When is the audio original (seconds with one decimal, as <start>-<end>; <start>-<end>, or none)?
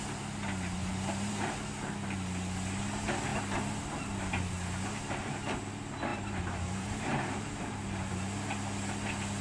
0.0-0.8; 1.4-6.1; 8.1-9.4